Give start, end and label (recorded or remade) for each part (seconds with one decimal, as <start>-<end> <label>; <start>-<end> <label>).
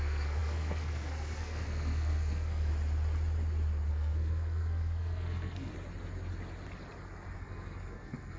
0.0-2.7 remade; 2.7-3.9 recorded; 3.9-5.7 remade; 5.7-7.4 recorded; 7.4-8.4 remade